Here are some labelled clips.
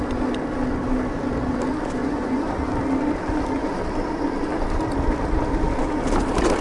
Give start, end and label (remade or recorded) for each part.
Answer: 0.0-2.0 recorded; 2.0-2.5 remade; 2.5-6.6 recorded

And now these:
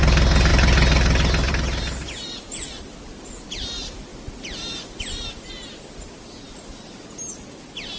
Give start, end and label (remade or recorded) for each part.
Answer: 0.0-8.0 recorded

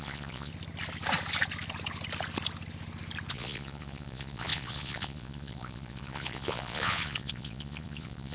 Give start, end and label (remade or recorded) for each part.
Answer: 0.0-0.5 remade; 0.5-3.3 recorded; 3.3-8.3 remade

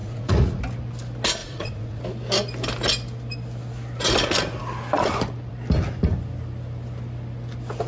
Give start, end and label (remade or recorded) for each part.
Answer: 0.0-0.6 remade; 0.6-1.4 recorded; 1.4-2.0 remade; 2.0-7.9 recorded

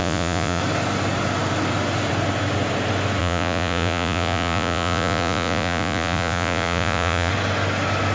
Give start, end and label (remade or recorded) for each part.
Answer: 0.0-0.6 remade; 0.6-3.2 recorded; 3.2-7.3 remade; 7.3-8.1 recorded

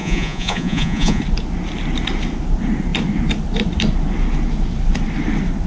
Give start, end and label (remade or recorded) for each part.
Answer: 0.0-1.2 remade; 1.2-5.7 recorded